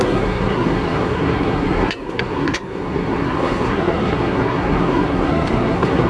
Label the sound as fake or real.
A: fake